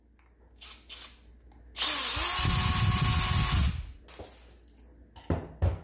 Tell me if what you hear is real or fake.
real